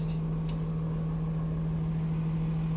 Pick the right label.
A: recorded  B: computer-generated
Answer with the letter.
A